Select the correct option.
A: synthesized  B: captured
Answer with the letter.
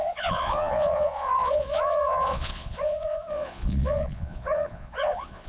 A